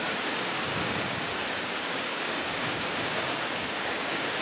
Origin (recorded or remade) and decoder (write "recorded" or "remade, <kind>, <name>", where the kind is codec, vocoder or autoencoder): remade, codec, DAC